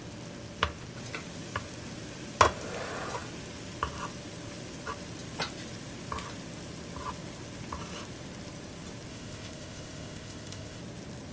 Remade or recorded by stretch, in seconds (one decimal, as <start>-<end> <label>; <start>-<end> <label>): 0.0-9.1 recorded; 9.1-10.8 remade; 10.8-11.3 recorded